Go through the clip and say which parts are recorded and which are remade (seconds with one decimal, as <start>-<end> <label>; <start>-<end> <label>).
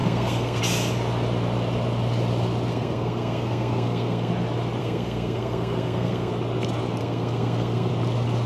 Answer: 0.0-0.6 remade; 0.6-2.7 recorded; 2.7-4.3 remade; 4.3-4.8 recorded; 4.8-6.3 remade; 6.3-7.0 recorded; 7.0-7.9 remade; 7.9-8.5 recorded